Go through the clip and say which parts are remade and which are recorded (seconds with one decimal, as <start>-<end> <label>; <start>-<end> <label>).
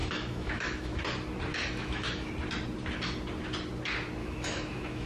0.0-1.0 remade; 1.0-1.5 recorded; 1.5-2.3 remade; 2.3-4.2 recorded; 4.2-5.1 remade